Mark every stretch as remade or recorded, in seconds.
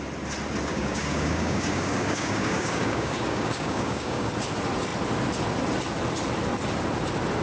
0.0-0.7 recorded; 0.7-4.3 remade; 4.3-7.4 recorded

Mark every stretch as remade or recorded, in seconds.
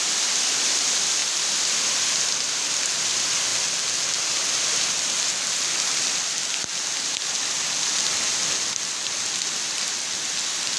0.0-10.8 recorded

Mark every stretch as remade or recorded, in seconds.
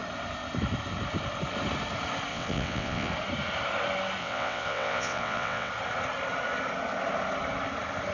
0.0-2.3 recorded; 2.3-3.1 remade; 3.1-4.2 recorded; 4.2-5.7 remade; 5.7-8.1 recorded